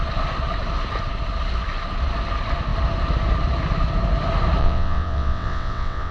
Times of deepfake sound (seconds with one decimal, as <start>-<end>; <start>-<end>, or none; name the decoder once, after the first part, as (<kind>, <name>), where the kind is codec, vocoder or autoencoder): 4.6-6.1 (vocoder, WaveNeXt)